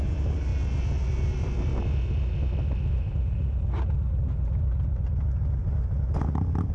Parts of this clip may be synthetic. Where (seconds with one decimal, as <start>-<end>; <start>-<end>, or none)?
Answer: 0.0-0.5; 1.2-1.7; 2.9-5.6